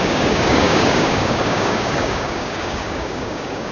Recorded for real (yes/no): no